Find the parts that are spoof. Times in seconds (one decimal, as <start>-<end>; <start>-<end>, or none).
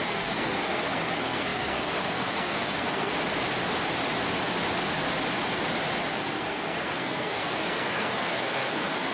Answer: 0.0-3.1; 6.1-9.1